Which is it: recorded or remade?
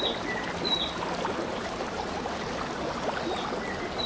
recorded